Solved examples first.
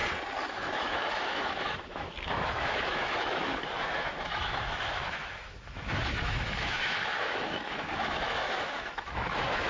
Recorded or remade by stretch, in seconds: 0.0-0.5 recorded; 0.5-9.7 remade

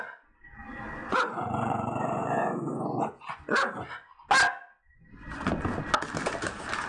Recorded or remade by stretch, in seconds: 0.0-1.0 recorded; 1.0-3.7 remade; 3.7-6.9 recorded

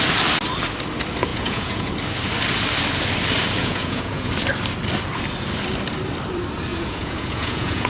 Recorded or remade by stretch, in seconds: 0.0-1.3 recorded; 1.3-1.9 remade; 1.9-3.6 recorded; 3.6-4.3 remade; 4.3-6.7 recorded; 6.7-7.9 remade

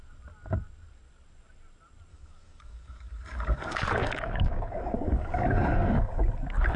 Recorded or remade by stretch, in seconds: 0.0-2.1 recorded; 2.1-6.2 remade; 6.2-6.8 recorded

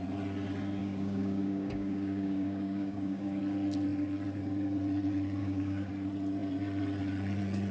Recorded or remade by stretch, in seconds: 0.0-0.8 recorded; 0.8-3.4 remade; 3.4-5.4 recorded; 5.4-5.9 remade; 5.9-7.7 recorded

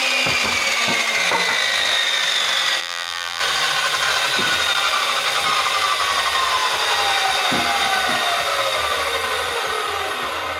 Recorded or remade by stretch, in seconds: 0.0-2.8 recorded; 2.8-3.4 remade; 3.4-10.6 recorded